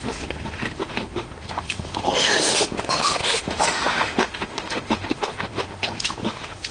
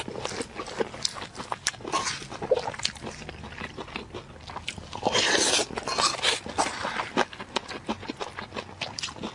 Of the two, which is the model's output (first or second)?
first